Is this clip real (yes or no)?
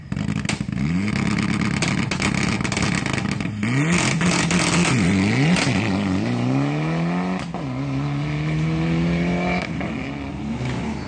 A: yes